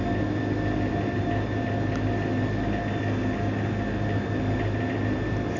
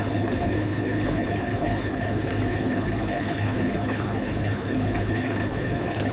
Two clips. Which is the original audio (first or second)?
first